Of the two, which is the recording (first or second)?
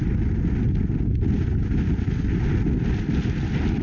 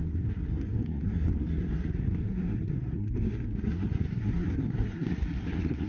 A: first